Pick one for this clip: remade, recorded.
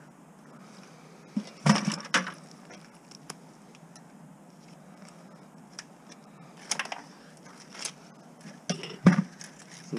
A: recorded